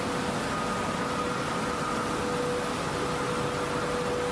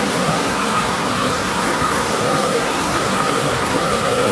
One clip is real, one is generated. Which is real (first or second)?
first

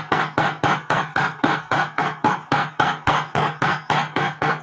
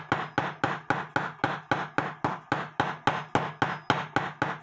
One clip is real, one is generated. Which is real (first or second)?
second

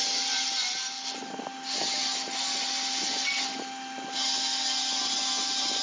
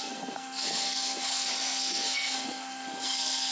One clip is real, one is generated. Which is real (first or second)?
first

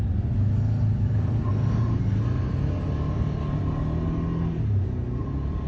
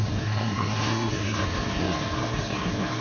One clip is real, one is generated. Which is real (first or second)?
first